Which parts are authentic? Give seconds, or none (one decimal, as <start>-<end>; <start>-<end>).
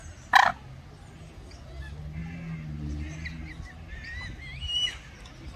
0.0-5.6